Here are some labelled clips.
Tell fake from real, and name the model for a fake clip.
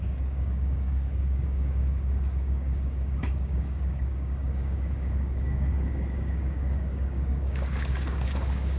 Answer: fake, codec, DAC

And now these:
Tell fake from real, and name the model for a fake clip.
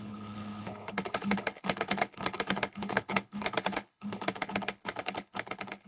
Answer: fake, codec, HILCodec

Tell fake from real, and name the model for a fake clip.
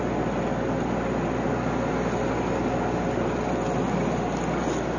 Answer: real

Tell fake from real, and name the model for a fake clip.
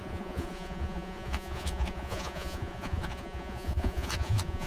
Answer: fake, vocoder, Vocos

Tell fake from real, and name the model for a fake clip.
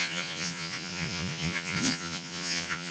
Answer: fake, vocoder, Vocos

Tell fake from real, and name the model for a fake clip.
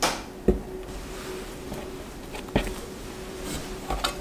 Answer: real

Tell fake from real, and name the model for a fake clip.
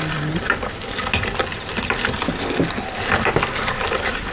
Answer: real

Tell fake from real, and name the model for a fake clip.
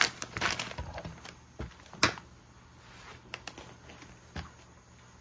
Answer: real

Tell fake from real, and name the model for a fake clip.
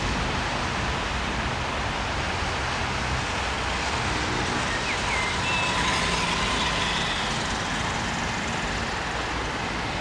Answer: real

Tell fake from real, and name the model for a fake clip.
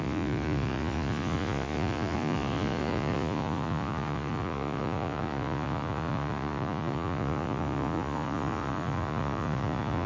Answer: fake, vocoder, Vocos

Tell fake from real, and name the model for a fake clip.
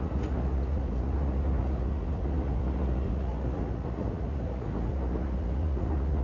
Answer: fake, vocoder, Vocos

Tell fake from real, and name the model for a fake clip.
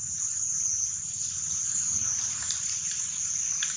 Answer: fake, vocoder, BigVGAN v2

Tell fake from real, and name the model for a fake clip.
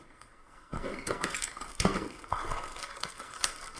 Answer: fake, codec, SNAC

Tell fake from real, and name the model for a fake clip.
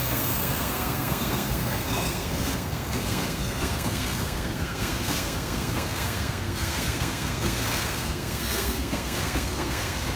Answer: fake, codec, SNAC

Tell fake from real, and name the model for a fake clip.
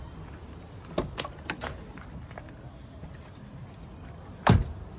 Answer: real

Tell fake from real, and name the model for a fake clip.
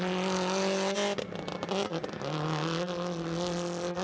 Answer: real